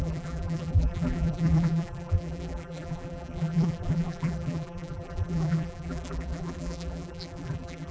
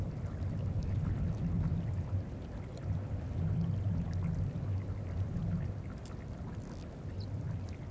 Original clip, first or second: second